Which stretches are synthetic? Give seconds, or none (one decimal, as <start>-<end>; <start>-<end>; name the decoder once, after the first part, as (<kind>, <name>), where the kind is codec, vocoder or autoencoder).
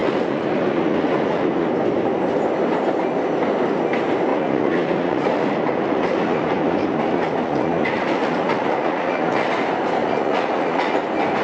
0.0-1.7 (vocoder, Vocos); 4.3-9.5; 10.0-11.0